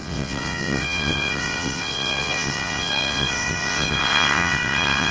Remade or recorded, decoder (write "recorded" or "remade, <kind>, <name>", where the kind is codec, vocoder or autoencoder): remade, vocoder, WaveNeXt